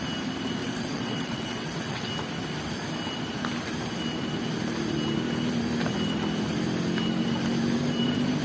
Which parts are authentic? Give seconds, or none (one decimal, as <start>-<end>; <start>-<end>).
0.0-0.6; 2.1-8.4